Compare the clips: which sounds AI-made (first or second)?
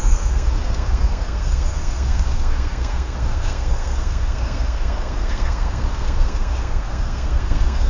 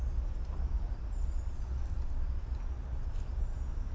first